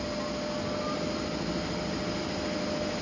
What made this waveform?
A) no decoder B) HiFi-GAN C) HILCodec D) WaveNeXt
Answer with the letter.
A